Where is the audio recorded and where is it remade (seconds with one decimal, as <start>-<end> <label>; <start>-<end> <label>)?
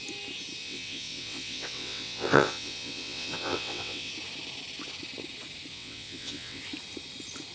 0.0-0.6 recorded; 0.6-4.1 remade; 4.1-5.7 recorded; 5.7-6.6 remade; 6.6-7.5 recorded